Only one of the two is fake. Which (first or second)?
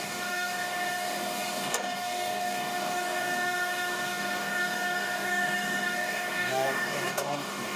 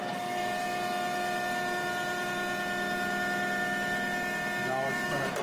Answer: first